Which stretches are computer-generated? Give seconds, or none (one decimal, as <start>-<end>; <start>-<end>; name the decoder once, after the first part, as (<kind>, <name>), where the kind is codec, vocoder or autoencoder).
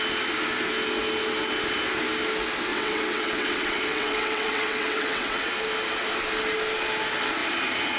2.7-5.5 (vocoder, WaveNeXt)